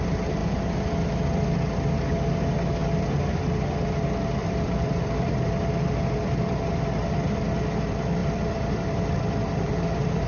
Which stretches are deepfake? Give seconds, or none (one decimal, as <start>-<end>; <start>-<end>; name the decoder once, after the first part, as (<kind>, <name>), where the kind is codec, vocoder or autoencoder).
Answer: 2.8-3.4 (vocoder, BigVGAN v2); 4.4-5.3; 8.2-10.3